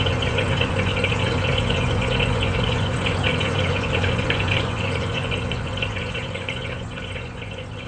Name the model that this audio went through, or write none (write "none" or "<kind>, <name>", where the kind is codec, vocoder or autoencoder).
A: vocoder, Vocos